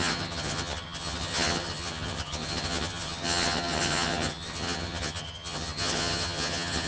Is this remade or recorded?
remade